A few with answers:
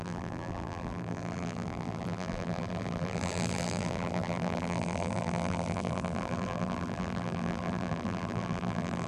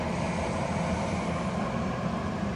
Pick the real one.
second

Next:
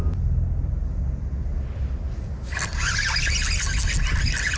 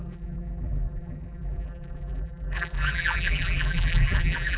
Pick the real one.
first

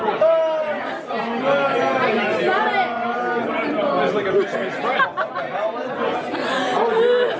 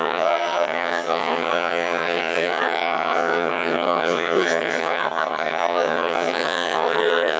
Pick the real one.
first